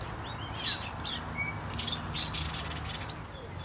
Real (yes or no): yes